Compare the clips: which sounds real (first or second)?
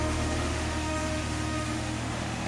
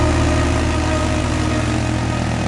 second